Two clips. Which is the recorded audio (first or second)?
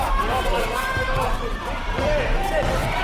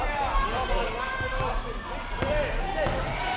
second